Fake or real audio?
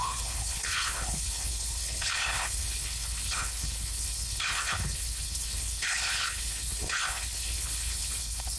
fake